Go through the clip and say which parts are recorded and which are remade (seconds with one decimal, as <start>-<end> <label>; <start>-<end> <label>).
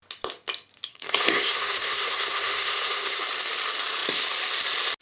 0.0-0.9 recorded; 0.9-3.2 remade; 3.2-5.0 recorded